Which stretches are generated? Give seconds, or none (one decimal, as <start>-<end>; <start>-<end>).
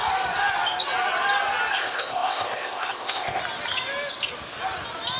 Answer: 1.7-3.4